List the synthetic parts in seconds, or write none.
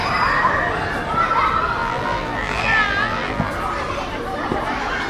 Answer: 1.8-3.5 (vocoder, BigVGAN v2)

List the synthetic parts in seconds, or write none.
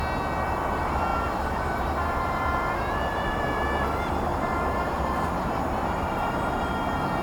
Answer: 1.1-3.4 (vocoder, BigVGAN v2); 4.3-6.6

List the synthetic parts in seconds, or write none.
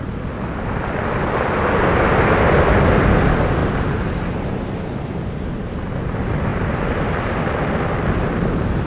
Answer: 3.6-4.6 (vocoder, BigVGAN v2)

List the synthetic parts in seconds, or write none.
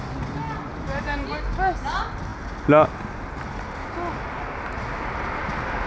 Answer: 0.7-1.3 (vocoder, BigVGAN v2)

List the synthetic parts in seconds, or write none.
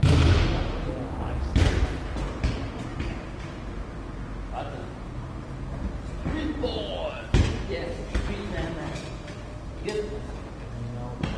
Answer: 2.9-3.4 (vocoder, BigVGAN v2)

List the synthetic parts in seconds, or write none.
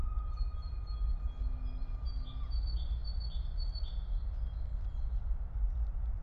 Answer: 0.0-1.2 (vocoder, BigVGAN v2); 4.7-6.2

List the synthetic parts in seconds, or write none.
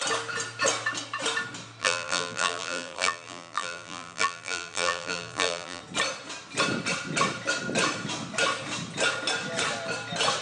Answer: 1.8-5.8 (vocoder, BigVGAN v2)